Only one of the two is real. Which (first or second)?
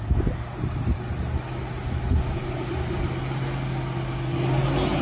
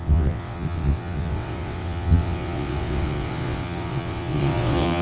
first